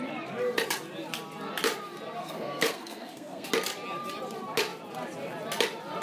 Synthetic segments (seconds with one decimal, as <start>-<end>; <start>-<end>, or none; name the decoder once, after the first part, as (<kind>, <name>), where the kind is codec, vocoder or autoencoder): 2.2-3.5 (codec, SNAC)